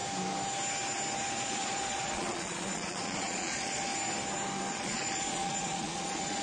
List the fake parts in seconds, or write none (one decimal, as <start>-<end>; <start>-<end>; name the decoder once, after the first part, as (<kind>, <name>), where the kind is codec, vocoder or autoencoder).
1.4-3.9 (vocoder, Vocos); 4.7-6.4